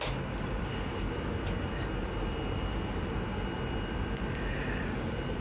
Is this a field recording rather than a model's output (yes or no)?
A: yes